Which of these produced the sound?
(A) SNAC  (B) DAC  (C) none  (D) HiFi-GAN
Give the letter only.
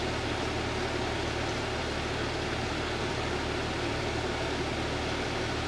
C